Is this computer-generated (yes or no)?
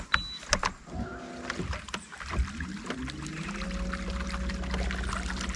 no